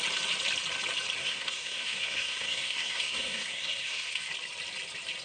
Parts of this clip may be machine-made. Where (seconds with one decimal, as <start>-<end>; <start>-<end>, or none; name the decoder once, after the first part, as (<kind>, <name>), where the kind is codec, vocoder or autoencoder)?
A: 1.2-4.3 (codec, SNAC)